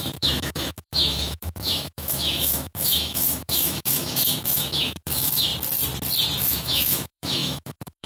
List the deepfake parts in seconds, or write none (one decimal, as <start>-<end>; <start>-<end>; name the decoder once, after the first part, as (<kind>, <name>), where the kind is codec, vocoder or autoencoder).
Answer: 0.0-5.5 (autoencoder, DAC-VAE); 6.4-8.1